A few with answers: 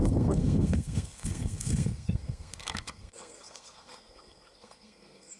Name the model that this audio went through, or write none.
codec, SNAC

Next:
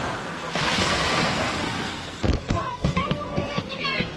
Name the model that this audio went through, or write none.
codec, SNAC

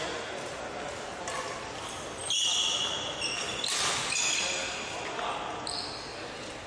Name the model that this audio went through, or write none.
none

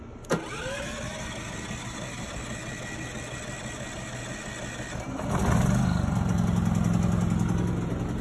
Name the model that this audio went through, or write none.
none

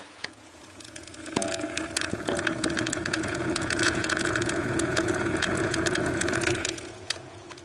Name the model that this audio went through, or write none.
vocoder, Vocos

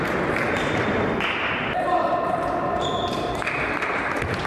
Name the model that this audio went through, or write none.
none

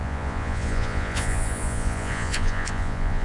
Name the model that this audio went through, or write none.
vocoder, Vocos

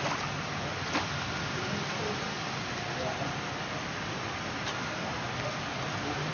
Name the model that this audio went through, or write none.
none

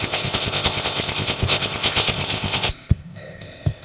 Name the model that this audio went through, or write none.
codec, ZipCodec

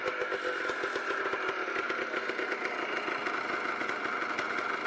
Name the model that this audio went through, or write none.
none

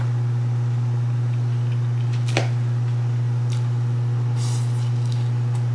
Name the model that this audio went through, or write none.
none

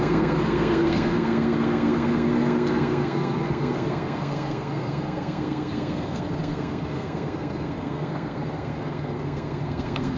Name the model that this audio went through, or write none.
codec, SNAC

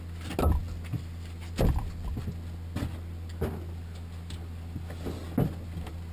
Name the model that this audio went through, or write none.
none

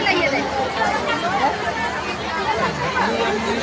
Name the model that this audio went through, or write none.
none